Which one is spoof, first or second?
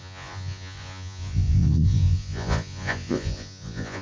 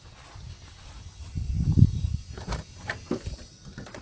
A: first